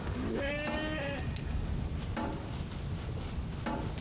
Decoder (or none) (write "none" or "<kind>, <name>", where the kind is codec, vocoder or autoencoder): none